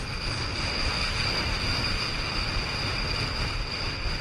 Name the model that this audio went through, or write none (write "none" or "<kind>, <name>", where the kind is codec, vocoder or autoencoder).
none